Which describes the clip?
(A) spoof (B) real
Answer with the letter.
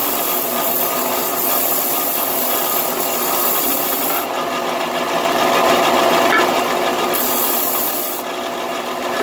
B